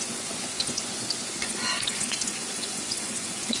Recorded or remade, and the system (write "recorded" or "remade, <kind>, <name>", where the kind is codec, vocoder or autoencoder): remade, vocoder, Vocos